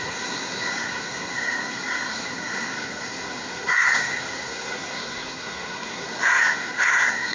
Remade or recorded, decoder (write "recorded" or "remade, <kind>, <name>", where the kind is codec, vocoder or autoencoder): remade, codec, SNAC